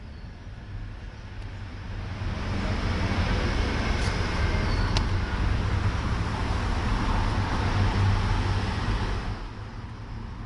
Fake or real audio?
real